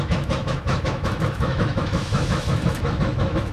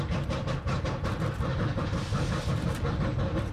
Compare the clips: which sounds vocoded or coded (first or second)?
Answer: first